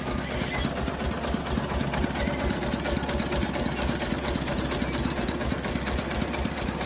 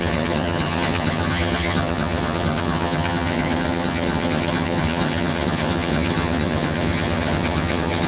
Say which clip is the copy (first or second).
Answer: second